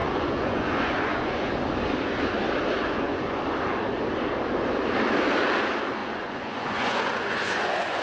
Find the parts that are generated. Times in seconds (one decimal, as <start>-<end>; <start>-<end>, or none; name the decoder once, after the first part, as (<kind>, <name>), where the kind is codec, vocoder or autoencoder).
0.0-1.5 (vocoder, Vocos); 2.8-3.4; 6.0-8.0